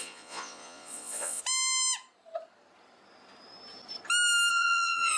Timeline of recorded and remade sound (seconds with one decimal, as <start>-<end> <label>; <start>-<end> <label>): 0.0-1.4 remade; 1.4-4.5 recorded; 4.5-5.2 remade